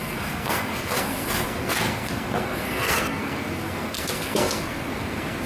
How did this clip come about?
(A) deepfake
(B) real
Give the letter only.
A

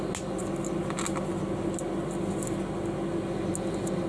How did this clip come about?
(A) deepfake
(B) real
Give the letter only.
B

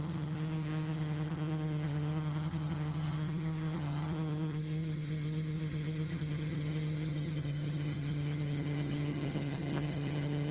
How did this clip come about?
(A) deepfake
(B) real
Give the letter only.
A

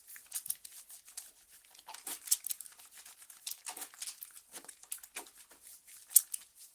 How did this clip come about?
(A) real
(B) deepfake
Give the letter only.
A